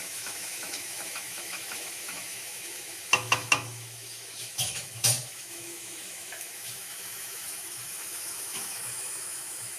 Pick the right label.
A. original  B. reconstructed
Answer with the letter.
B